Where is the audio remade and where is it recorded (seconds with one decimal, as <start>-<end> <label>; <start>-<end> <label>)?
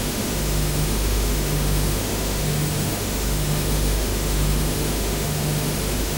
0.0-6.2 remade